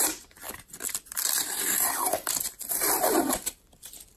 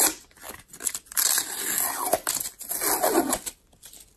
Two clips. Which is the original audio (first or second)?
second